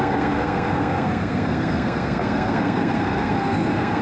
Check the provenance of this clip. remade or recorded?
remade